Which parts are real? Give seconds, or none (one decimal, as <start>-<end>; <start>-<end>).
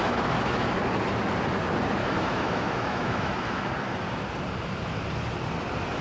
0.7-2.0; 3.7-6.0